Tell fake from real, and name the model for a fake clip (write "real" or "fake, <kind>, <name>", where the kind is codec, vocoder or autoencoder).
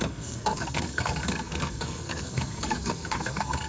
fake, codec, SNAC